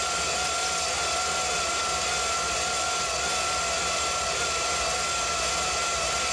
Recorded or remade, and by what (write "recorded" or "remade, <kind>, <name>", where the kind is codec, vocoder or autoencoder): recorded